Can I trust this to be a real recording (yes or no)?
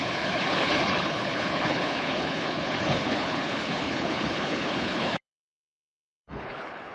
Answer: no